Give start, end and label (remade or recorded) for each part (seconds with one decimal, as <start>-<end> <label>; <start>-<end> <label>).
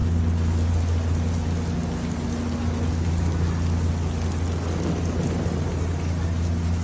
0.0-6.8 recorded